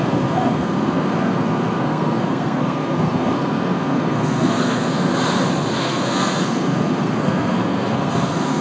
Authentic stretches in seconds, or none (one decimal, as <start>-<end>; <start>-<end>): 5.1-5.8